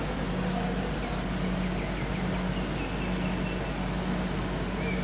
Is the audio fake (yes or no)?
no